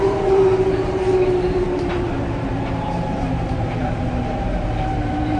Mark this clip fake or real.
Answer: fake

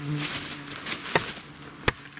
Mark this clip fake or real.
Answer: real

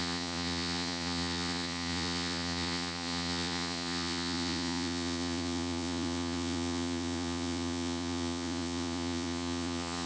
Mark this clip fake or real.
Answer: fake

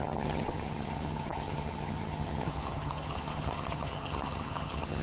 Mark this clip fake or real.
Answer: fake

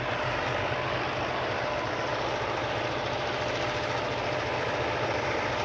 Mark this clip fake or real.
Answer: real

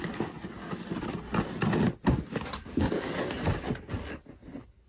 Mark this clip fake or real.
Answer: real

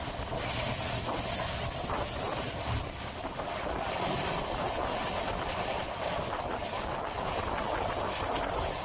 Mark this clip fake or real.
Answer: real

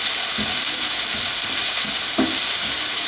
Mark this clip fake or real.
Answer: real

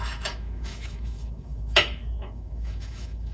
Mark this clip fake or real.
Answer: fake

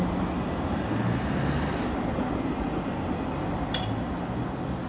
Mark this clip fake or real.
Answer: real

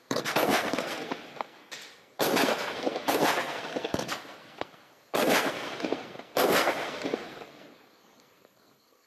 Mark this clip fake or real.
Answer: fake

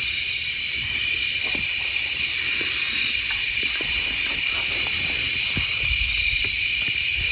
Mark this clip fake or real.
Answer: real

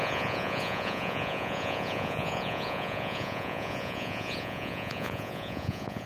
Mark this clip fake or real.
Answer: fake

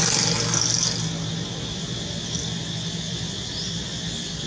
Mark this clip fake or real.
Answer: real